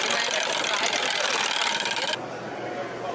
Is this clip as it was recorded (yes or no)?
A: yes